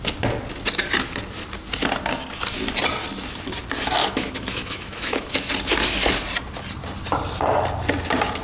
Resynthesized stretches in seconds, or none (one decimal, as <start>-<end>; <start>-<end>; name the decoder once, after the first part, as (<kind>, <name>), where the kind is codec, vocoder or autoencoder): 4.0-5.5 (autoencoder, DAC-VAE)